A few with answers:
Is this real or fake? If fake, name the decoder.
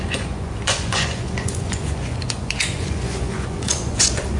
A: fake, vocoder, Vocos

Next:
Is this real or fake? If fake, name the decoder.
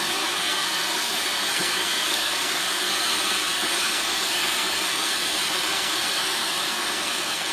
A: fake, codec, SNAC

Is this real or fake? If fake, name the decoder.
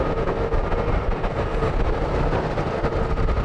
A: real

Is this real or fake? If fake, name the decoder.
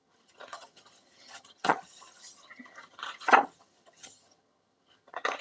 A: fake, vocoder, HiFi-GAN